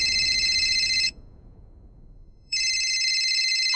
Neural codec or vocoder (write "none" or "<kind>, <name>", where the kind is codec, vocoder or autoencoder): vocoder, Vocos